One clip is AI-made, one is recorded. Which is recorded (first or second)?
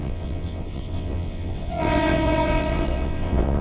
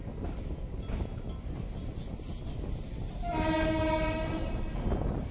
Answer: second